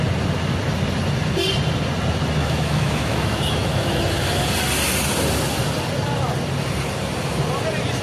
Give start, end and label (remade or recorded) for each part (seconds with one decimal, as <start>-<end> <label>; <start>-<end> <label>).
0.0-2.4 recorded; 2.4-4.0 remade; 4.0-8.0 recorded